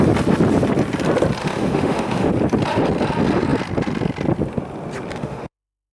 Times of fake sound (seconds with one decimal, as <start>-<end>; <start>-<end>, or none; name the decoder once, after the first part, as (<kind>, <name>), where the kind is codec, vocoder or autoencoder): 1.4-2.3 (autoencoder, DAC-VAE); 5.1-5.9